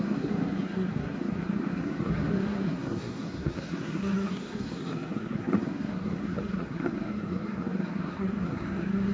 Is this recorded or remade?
remade